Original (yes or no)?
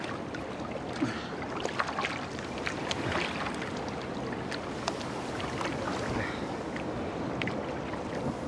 yes